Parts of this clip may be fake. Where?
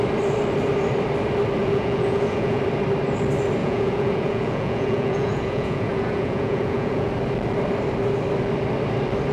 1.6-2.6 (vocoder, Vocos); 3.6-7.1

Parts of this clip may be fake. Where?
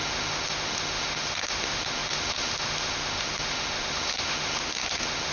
0.0-5.3 (autoencoder, DAC-VAE)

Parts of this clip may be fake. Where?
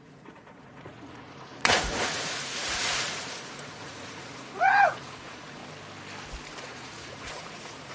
0.0-5.6 (vocoder, Vocos); 6.6-7.9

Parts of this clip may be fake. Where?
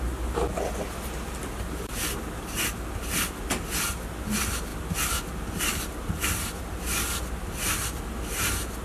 none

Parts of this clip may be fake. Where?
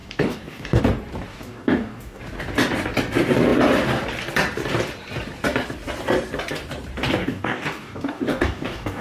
0.0-0.8 (codec, DAC); 1.3-2.2; 7.2-9.0